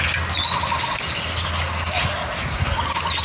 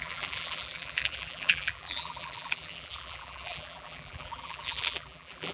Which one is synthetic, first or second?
second